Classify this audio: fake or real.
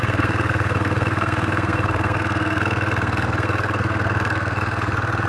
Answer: fake